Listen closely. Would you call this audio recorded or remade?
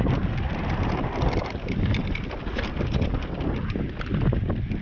recorded